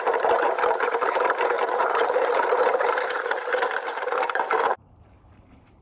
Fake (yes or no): yes